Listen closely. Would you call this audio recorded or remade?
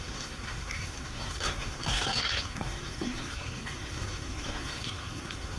remade